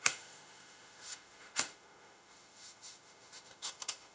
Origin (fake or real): fake